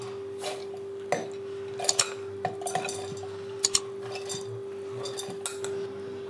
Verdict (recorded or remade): recorded